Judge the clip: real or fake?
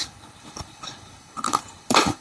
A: fake